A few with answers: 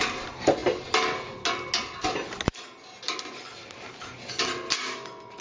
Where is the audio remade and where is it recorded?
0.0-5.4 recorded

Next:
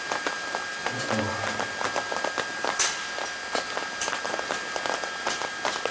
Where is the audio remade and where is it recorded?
0.0-5.9 recorded

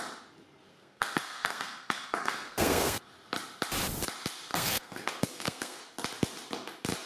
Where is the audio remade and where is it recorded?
0.0-0.7 recorded; 0.7-3.0 remade; 3.0-4.5 recorded; 4.5-5.8 remade; 5.8-7.1 recorded

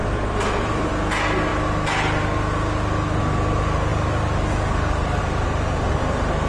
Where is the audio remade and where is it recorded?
0.0-0.9 remade; 0.9-6.5 recorded

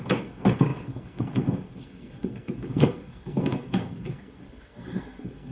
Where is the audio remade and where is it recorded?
0.0-5.5 remade

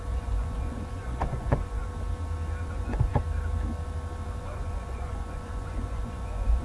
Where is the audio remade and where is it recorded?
0.0-1.8 remade; 1.8-2.7 recorded; 2.7-3.1 remade; 3.1-4.4 recorded; 4.4-6.6 remade

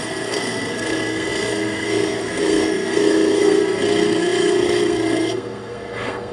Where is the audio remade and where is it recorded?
0.0-6.3 remade

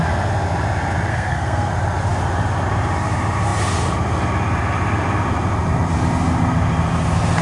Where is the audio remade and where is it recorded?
0.0-1.1 recorded; 1.1-1.7 remade; 1.7-7.4 recorded